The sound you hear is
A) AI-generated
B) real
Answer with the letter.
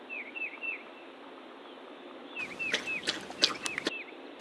B